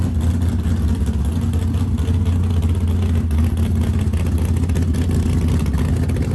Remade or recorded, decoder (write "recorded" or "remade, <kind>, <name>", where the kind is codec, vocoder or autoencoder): recorded